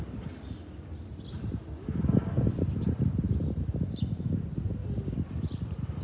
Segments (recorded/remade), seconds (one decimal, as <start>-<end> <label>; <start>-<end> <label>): 0.0-6.0 recorded